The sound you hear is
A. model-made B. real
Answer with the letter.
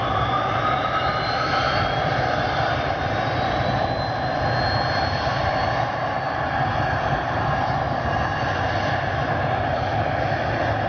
B